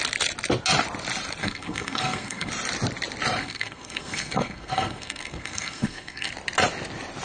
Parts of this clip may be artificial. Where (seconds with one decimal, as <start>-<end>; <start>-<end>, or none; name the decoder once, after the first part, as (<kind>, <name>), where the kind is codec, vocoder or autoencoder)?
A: 1.4-2.5 (codec, SNAC); 3.4-6.3